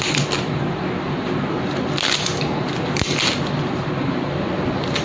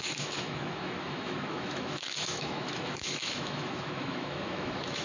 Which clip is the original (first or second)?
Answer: first